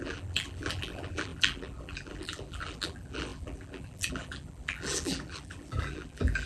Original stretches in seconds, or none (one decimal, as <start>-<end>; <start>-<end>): none